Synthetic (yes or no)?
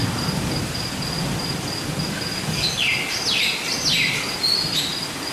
no